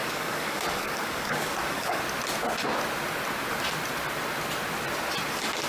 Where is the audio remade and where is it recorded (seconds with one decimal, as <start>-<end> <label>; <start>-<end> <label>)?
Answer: 0.0-2.0 remade; 2.0-5.7 recorded